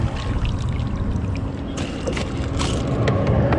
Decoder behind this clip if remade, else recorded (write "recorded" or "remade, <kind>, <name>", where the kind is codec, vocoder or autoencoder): recorded